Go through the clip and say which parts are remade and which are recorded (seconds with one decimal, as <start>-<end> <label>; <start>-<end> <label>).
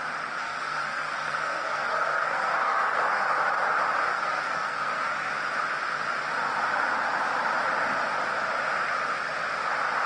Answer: 0.0-0.4 recorded; 0.4-3.4 remade; 3.4-4.1 recorded; 4.1-5.3 remade; 5.3-10.1 recorded